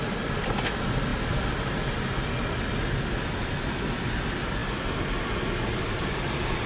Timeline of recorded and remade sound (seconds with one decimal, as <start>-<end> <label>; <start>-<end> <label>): 0.0-6.7 recorded